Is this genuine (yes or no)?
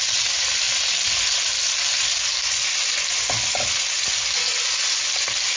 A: yes